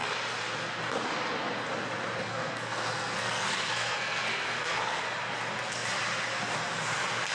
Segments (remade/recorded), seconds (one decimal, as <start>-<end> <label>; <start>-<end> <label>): 0.0-2.2 recorded; 2.2-5.0 remade; 5.0-7.3 recorded